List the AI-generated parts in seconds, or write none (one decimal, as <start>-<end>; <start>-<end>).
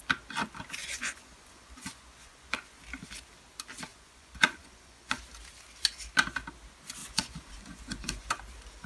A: 0.8-2.8; 3.9-5.2; 7.0-8.3